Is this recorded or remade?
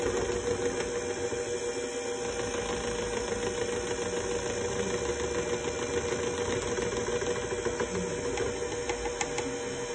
recorded